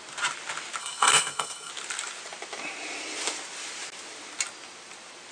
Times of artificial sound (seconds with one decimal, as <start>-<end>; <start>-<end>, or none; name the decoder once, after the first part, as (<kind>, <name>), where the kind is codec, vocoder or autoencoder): 0.8-1.7 (codec, SNAC)